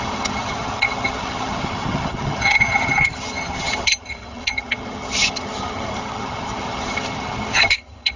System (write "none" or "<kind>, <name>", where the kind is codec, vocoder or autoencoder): vocoder, HiFi-GAN